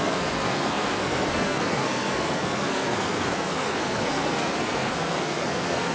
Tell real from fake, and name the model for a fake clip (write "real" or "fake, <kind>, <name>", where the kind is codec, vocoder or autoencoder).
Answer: fake, codec, SNAC